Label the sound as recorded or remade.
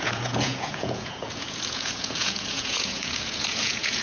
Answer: remade